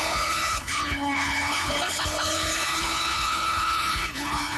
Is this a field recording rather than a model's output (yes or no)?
no